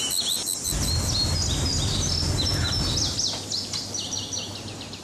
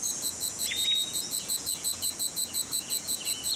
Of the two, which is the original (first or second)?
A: first